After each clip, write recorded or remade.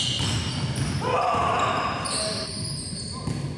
recorded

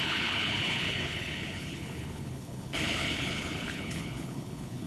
remade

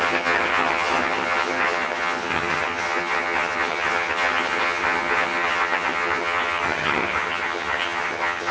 remade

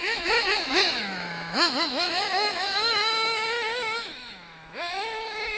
remade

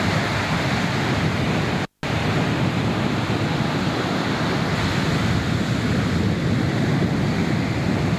recorded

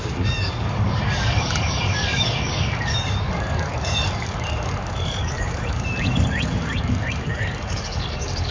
remade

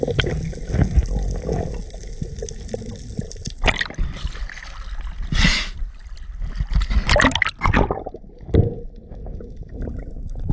recorded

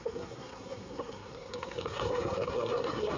remade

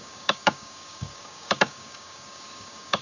remade